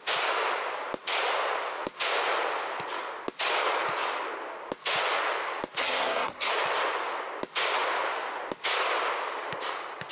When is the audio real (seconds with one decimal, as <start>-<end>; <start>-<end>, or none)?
0.0-5.8; 6.5-10.1